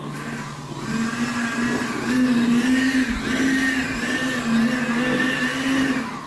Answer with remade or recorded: recorded